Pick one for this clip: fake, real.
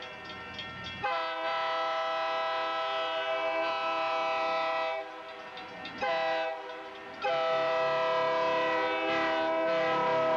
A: real